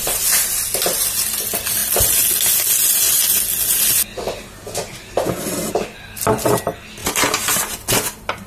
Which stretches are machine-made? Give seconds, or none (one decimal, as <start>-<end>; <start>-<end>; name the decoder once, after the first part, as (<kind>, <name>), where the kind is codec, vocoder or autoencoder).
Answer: none